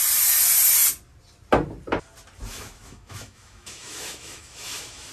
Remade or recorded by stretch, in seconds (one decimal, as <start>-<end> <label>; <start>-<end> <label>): 0.0-2.5 recorded; 2.5-5.1 remade